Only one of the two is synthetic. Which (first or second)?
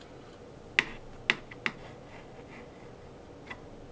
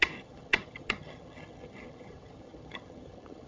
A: second